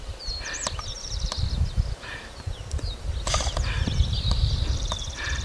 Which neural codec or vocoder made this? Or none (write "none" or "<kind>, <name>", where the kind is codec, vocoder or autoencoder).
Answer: vocoder, BigVGAN v2